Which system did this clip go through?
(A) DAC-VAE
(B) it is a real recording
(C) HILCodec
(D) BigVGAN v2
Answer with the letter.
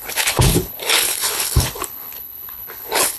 C